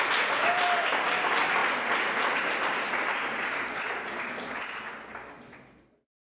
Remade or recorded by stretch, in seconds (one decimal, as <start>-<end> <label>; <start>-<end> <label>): 0.0-6.4 recorded